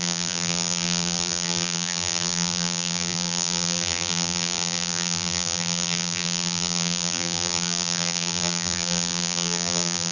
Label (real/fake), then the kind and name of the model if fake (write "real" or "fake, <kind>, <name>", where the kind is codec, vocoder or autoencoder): fake, vocoder, BigVGAN v2